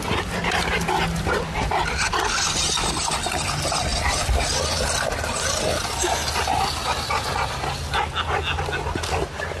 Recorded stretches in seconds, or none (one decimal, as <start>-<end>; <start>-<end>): 0.0-9.6